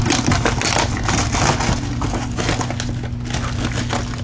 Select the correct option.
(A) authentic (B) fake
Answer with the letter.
A